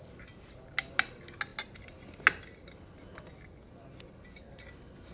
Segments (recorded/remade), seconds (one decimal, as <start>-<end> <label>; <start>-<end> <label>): 0.0-5.1 recorded